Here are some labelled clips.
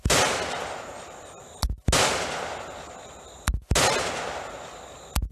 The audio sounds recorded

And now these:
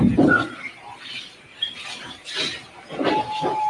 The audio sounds remade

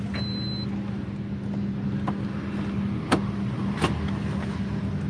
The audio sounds recorded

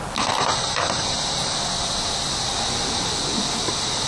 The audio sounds recorded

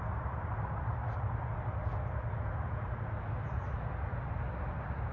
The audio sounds recorded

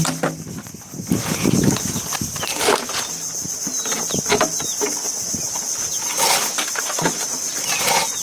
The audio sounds recorded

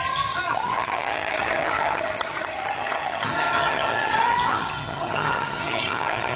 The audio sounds remade